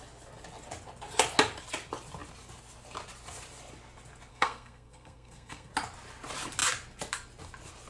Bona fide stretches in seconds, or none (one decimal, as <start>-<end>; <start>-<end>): 0.0-4.3; 5.7-7.9